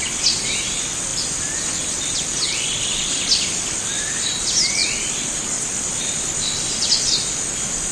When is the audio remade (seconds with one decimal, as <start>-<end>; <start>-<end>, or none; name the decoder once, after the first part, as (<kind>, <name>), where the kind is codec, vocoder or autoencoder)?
none